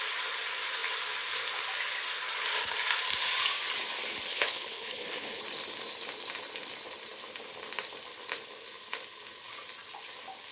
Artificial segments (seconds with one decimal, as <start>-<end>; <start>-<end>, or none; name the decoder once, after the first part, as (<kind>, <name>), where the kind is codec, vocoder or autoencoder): 4.3-5.4 (codec, HILCodec)